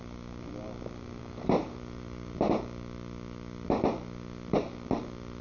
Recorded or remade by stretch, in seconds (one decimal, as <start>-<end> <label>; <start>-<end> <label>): 0.0-1.2 recorded; 1.2-2.6 remade; 2.6-5.4 recorded